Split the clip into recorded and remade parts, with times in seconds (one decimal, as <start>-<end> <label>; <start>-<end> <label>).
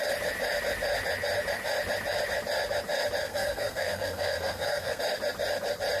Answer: 0.0-3.2 recorded; 3.2-5.0 remade; 5.0-6.0 recorded